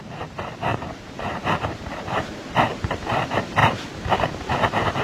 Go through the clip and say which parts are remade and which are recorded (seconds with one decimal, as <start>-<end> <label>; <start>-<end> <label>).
0.0-0.7 recorded; 0.7-3.2 remade; 3.2-3.6 recorded; 3.6-4.1 remade; 4.1-5.0 recorded